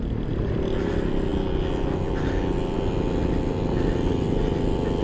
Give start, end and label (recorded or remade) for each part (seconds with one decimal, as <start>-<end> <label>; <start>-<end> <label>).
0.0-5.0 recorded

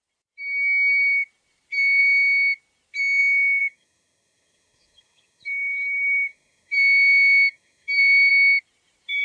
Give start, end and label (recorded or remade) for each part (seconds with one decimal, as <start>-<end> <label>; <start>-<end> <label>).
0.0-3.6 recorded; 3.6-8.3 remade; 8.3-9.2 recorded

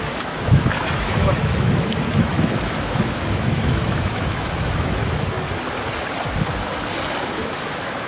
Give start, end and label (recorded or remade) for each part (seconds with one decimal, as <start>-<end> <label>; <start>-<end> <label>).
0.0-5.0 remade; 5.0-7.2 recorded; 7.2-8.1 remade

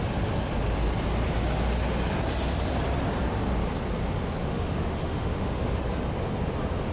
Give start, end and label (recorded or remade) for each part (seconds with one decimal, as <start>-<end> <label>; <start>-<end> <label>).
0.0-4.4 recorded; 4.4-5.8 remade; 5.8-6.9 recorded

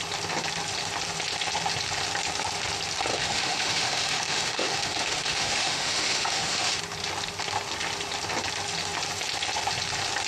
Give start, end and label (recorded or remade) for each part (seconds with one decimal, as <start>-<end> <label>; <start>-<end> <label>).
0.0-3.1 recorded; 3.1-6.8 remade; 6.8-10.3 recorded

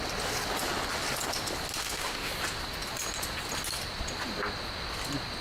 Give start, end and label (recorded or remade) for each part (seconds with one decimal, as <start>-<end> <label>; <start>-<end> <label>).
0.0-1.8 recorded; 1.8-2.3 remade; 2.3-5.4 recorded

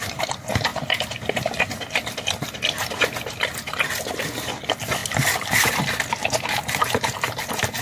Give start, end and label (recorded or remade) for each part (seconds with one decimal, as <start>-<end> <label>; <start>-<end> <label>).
0.0-7.8 recorded

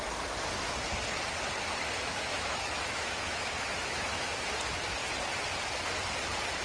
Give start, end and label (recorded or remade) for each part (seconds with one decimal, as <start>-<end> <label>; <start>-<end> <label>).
0.0-2.1 recorded; 2.1-4.5 remade; 4.5-6.6 recorded